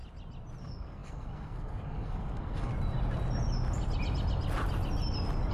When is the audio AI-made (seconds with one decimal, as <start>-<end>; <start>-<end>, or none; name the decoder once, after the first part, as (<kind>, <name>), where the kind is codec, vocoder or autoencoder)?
0.6-2.7 (codec, SNAC)